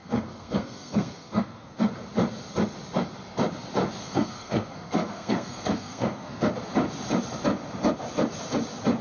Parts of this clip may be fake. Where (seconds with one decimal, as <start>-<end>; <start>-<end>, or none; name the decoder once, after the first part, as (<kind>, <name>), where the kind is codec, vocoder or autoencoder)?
0.0-1.9 (codec, SNAC); 4.0-6.5